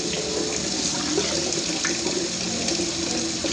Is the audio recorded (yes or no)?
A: yes